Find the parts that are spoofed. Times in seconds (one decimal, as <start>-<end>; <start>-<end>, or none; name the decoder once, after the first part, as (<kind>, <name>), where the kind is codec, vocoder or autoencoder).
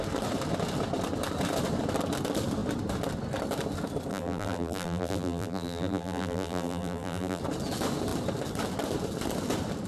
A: 4.1-7.4 (vocoder, BigVGAN v2)